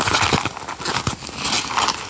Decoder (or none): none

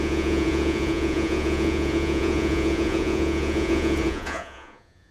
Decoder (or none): vocoder, Vocos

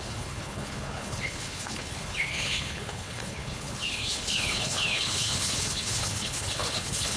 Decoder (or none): codec, HILCodec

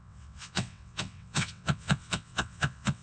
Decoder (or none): vocoder, WaveNeXt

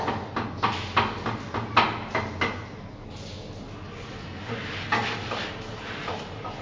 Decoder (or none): none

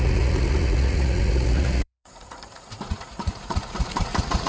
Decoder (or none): vocoder, Vocos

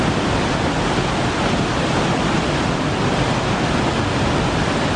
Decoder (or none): none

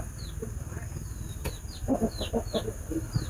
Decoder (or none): none